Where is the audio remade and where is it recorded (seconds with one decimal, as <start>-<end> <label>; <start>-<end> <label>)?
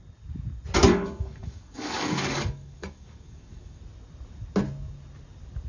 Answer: 0.0-0.8 recorded; 0.8-3.8 remade; 3.8-5.7 recorded